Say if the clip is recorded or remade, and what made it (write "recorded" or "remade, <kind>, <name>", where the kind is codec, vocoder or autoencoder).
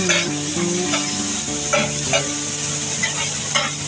recorded